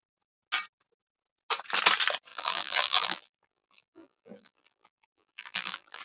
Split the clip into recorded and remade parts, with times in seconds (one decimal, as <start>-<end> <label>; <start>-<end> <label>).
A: 0.0-2.3 recorded; 2.3-6.0 remade